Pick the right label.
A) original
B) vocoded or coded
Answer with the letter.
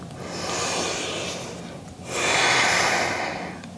A